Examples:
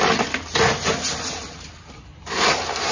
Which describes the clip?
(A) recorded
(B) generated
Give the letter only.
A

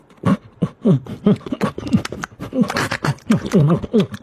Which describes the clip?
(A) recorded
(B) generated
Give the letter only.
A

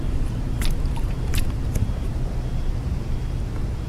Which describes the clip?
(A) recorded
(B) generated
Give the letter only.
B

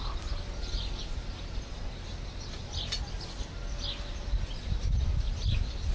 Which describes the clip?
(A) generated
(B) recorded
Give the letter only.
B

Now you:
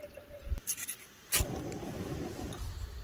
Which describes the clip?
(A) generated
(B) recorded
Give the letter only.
B